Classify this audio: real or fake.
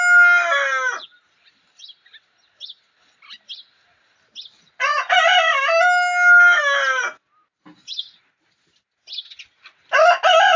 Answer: real